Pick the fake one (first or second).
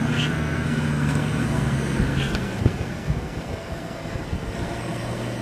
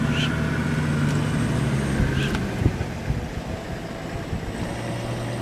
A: first